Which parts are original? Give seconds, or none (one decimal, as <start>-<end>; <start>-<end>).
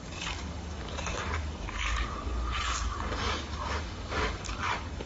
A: none